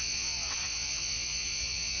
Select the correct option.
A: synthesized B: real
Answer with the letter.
A